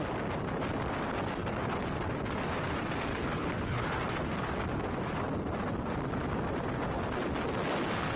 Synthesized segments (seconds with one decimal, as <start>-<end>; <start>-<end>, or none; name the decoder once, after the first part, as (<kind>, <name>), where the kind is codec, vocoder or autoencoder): 3.1-4.0 (codec, HILCodec)